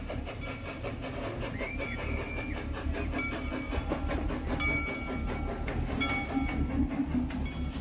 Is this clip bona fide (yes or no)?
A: yes